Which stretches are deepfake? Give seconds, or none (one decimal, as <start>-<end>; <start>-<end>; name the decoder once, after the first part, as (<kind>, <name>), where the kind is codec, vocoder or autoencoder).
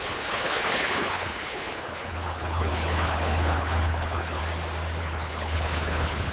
0.0-4.4 (codec, HILCodec); 5.0-6.3